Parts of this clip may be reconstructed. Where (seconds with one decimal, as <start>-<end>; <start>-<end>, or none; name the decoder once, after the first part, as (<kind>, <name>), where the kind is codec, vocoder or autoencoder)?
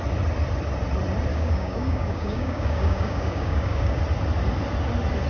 1.3-4.0 (codec, DAC)